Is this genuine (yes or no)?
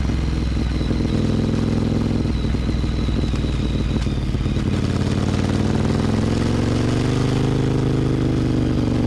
yes